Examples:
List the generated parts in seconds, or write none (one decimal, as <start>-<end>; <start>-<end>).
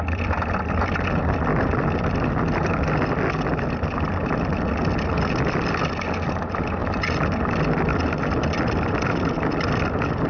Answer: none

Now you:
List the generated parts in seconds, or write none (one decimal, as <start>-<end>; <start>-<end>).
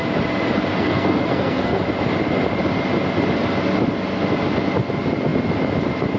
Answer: 0.7-1.8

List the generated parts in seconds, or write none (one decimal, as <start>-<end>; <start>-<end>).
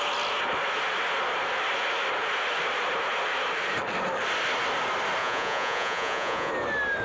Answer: 5.2-6.5